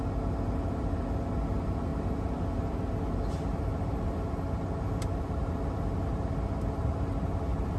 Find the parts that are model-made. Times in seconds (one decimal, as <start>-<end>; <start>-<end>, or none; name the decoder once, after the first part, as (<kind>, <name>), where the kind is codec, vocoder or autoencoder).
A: none